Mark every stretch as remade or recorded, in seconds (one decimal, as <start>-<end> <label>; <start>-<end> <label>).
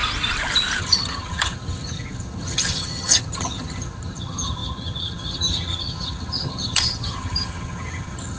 0.0-0.8 recorded; 0.8-8.4 remade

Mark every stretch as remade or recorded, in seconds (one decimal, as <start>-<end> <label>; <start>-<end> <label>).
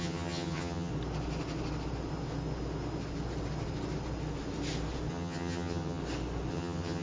0.0-0.9 remade; 0.9-5.1 recorded; 5.1-6.0 remade; 6.0-6.5 recorded; 6.5-7.0 remade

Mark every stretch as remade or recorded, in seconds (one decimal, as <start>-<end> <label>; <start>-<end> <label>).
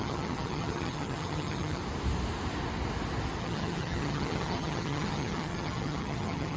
0.0-1.8 remade; 1.8-3.4 recorded; 3.4-6.6 remade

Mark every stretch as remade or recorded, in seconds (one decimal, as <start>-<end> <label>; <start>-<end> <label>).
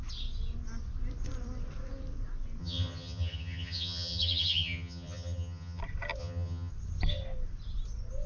0.0-2.6 recorded; 2.6-5.8 remade; 5.8-6.2 recorded; 6.2-6.7 remade; 6.7-8.3 recorded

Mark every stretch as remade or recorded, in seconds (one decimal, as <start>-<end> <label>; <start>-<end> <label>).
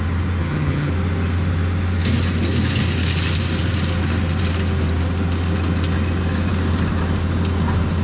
0.0-0.4 recorded; 0.4-0.9 remade; 0.9-8.0 recorded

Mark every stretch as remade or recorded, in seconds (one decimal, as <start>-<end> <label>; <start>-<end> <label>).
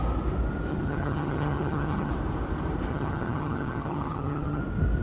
0.0-0.7 recorded; 0.7-2.1 remade; 2.1-2.9 recorded; 2.9-4.6 remade; 4.6-5.0 recorded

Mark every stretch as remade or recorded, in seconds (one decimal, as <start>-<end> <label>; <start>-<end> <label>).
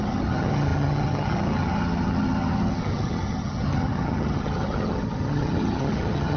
0.0-6.4 remade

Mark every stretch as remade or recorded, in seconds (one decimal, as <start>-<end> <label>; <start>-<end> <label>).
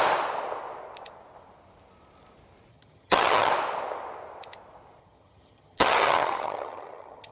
0.0-2.7 recorded; 2.7-3.5 remade; 3.5-5.0 recorded; 5.0-7.3 remade